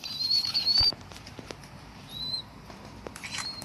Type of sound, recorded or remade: remade